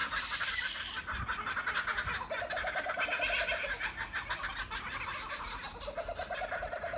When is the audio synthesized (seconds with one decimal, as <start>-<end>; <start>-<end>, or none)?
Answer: none

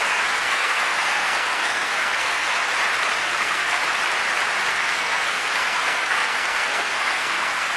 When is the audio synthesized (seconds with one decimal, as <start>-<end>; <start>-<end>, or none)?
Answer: 0.0-2.6; 3.2-3.8; 4.7-7.8

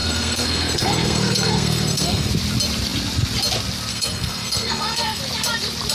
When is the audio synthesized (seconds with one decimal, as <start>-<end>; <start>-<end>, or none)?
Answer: 0.0-2.3; 3.9-5.2

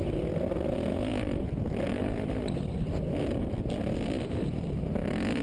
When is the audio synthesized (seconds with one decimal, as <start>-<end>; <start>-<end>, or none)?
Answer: none

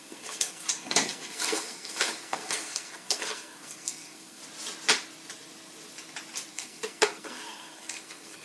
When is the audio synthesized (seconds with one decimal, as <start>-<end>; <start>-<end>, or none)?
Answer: 0.0-4.4; 6.5-8.4

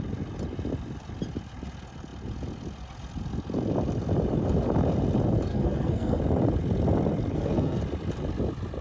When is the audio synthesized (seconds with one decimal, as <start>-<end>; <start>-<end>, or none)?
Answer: 5.5-6.2; 7.3-7.8

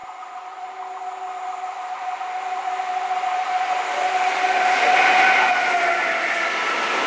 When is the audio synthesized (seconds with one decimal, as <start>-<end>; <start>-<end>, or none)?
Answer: none